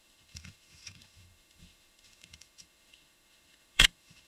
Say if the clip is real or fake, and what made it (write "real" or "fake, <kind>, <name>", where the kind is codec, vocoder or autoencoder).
fake, autoencoder, DAC-VAE